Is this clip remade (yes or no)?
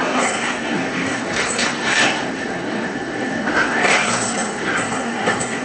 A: yes